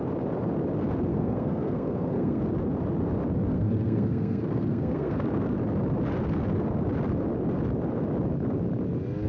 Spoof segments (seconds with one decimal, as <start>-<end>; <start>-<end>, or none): 1.1-2.4; 3.5-5.6